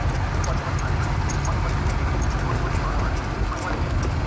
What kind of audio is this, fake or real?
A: real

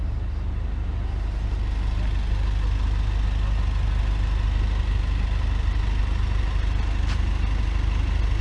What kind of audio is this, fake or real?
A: real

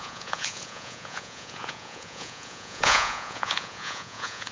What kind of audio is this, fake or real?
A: fake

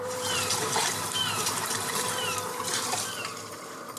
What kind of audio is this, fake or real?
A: fake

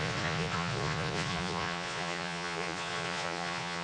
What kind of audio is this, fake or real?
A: fake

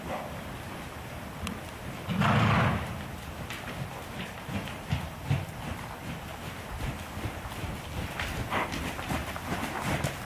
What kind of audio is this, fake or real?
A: real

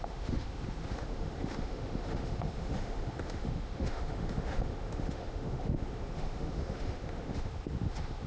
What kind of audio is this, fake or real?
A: fake